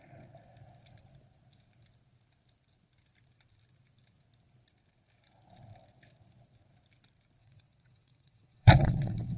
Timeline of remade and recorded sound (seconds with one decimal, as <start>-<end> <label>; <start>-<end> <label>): 0.0-7.4 recorded; 7.4-9.4 remade